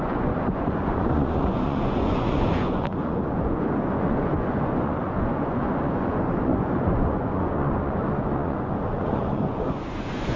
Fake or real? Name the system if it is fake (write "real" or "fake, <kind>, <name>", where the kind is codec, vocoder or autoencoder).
fake, vocoder, Vocos